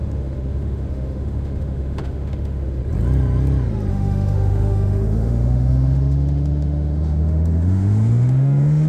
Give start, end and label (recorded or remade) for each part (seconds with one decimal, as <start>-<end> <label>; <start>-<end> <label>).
0.0-2.8 remade; 2.8-3.9 recorded; 3.9-8.9 remade